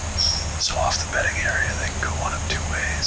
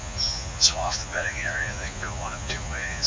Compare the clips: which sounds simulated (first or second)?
second